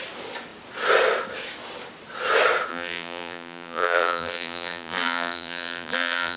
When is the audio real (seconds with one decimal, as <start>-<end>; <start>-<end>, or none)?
0.0-2.7